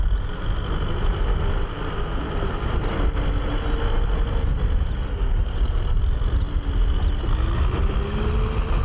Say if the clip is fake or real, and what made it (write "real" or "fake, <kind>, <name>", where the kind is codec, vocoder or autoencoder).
real